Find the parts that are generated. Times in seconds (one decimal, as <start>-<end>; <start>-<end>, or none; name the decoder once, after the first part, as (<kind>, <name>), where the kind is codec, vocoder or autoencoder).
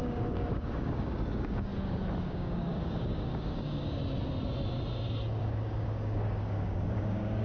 0.0-1.7 (codec, DAC); 2.2-4.0; 5.4-7.4